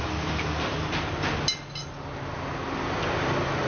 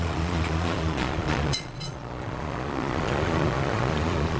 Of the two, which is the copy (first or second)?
second